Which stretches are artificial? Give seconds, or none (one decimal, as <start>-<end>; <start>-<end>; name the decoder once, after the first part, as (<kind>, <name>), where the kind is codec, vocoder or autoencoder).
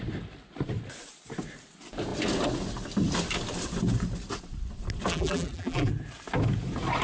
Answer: 5.1-5.9 (vocoder, BigVGAN v2)